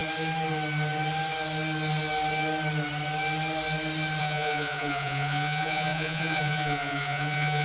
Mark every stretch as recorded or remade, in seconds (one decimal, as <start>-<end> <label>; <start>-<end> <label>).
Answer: 0.0-4.2 recorded; 4.2-7.6 remade